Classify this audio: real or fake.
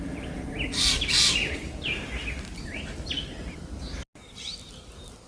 real